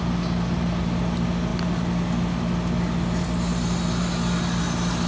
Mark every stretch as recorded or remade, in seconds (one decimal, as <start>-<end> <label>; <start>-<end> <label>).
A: 0.0-5.1 recorded